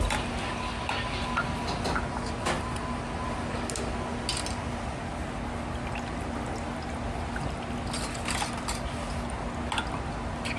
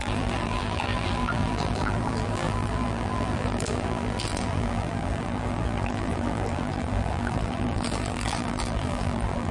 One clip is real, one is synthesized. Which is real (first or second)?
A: first